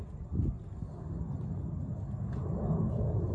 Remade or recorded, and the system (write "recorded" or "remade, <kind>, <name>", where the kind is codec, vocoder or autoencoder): recorded